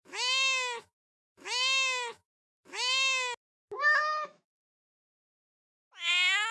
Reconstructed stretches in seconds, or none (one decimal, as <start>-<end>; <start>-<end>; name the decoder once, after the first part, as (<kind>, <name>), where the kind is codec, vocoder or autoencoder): 0.0-4.5 (autoencoder, DAC-VAE); 6.1-6.5